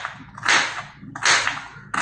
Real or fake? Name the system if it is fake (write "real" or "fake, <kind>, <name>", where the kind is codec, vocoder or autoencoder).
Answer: real